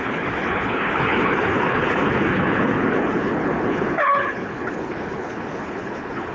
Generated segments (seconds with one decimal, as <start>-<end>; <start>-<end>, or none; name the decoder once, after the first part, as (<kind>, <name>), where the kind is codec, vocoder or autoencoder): 0.0-6.3 (codec, HILCodec)